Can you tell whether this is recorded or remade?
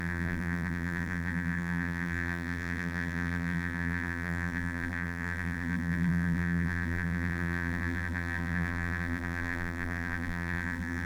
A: remade